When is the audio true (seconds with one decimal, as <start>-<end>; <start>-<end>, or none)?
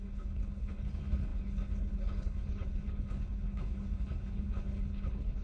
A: none